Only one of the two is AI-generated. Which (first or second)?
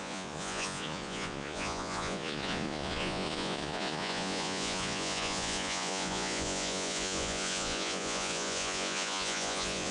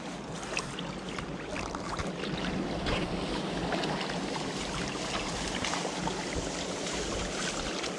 first